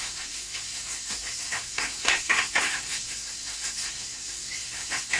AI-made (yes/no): yes